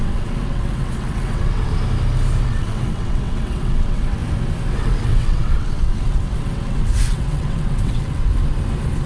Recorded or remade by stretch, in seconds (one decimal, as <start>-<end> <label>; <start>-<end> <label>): 0.0-1.7 remade; 1.7-2.4 recorded; 2.4-4.2 remade; 4.2-4.7 recorded; 4.7-8.3 remade; 8.3-9.1 recorded